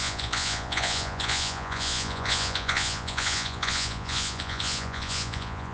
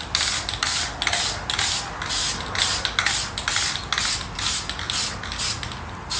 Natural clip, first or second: second